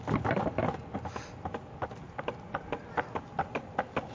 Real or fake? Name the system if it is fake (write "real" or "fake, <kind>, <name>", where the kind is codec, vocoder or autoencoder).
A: real